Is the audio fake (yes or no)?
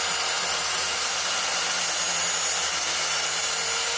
no